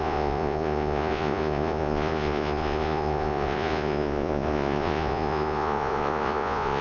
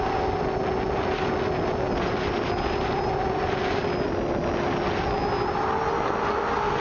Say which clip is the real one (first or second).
second